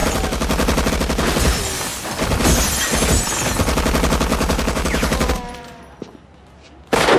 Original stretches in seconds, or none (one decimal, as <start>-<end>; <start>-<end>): 0.0-4.3; 5.3-7.2